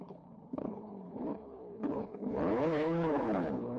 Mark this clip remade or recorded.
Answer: remade